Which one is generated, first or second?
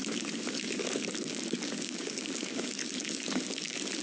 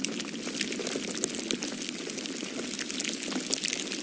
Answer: first